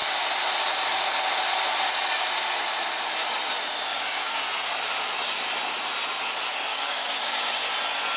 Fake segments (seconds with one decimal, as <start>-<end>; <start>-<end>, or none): 3.9-4.4; 6.7-7.7